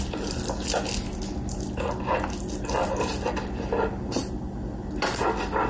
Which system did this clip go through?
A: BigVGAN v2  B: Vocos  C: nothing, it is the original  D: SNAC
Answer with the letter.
C